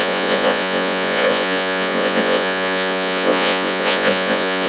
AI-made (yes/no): yes